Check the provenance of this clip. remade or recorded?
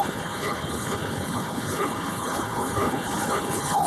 remade